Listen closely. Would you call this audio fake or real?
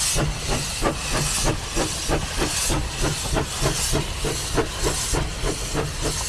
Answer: real